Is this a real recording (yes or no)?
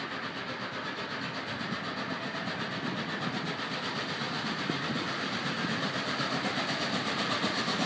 yes